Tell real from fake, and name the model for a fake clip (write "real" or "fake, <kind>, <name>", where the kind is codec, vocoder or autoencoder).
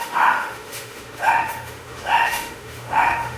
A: fake, autoencoder, DAC-VAE